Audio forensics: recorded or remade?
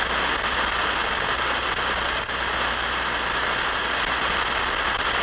recorded